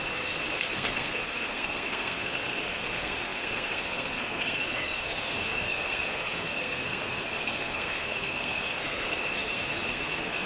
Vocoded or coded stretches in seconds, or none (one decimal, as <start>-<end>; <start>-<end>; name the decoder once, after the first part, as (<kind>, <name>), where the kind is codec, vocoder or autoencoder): 0.0-10.5 (codec, SNAC)